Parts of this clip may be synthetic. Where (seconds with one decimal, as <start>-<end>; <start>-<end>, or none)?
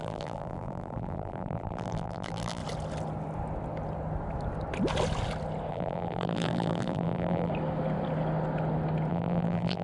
0.0-2.6; 5.7-7.5; 9.1-9.8